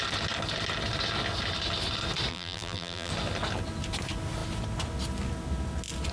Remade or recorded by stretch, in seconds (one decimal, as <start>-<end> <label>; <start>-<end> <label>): 0.0-2.3 recorded; 2.3-3.1 remade; 3.1-6.1 recorded